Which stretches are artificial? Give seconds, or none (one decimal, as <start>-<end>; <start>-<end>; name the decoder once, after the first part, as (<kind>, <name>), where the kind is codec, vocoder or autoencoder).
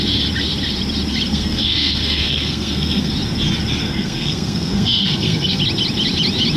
1.3-3.1 (codec, SNAC); 3.8-5.6